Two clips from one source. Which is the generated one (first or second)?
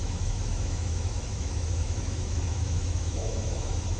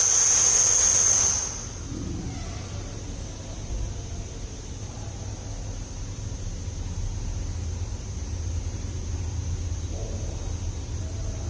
first